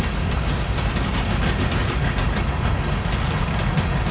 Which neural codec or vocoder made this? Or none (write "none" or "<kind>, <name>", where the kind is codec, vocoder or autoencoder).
none